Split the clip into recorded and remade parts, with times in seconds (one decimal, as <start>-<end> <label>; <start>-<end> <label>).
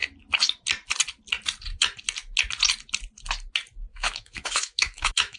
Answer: 0.0-3.9 recorded; 3.9-5.4 remade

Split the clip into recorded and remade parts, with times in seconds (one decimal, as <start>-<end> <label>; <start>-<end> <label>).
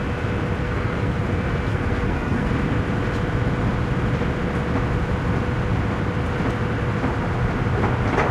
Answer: 0.0-0.6 recorded; 0.6-1.2 remade; 1.2-1.7 recorded; 1.7-2.5 remade; 2.5-8.3 recorded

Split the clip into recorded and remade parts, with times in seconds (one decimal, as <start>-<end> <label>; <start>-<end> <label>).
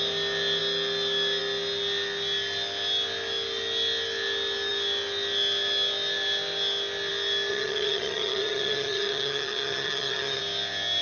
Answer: 0.0-7.5 recorded; 7.5-10.4 remade; 10.4-11.0 recorded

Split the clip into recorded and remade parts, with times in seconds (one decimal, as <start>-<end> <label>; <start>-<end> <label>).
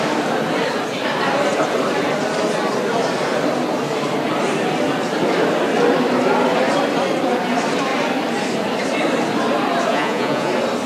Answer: 0.0-9.9 recorded; 9.9-10.5 remade; 10.5-10.9 recorded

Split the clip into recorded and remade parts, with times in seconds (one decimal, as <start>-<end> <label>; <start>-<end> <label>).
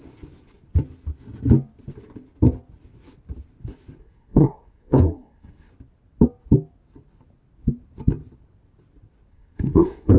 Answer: 0.0-4.0 recorded; 4.0-5.7 remade; 5.7-9.3 recorded; 9.3-10.2 remade